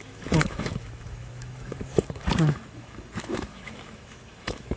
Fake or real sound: fake